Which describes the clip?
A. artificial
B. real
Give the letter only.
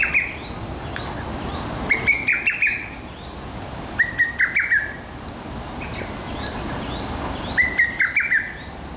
B